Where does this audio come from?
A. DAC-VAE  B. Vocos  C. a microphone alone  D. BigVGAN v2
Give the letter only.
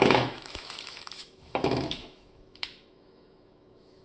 A